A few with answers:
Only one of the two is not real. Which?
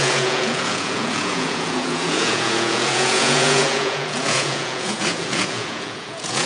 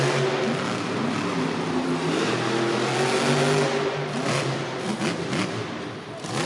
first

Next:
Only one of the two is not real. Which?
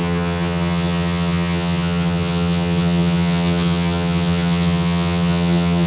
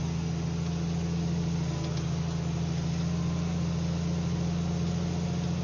first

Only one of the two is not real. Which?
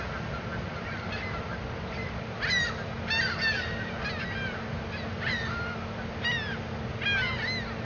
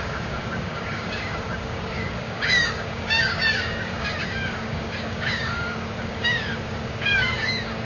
second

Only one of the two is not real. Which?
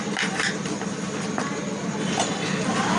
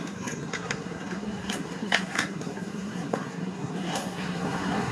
second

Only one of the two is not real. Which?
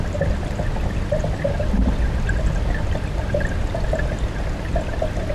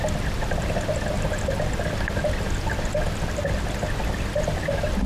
first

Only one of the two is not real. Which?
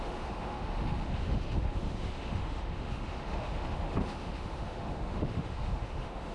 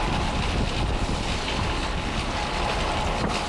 first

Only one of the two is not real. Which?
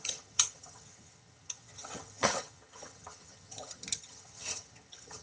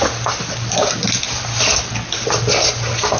first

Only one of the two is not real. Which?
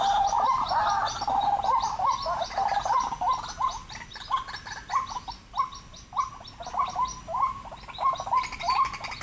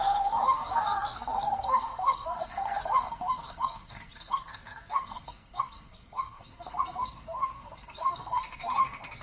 second